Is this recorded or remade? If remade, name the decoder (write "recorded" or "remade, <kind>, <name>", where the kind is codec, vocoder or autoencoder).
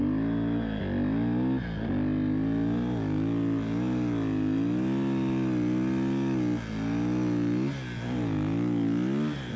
recorded